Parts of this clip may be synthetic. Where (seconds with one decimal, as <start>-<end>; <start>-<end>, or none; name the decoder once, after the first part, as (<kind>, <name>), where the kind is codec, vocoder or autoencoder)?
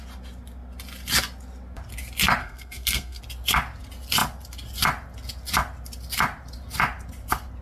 2.4-3.2 (codec, SNAC)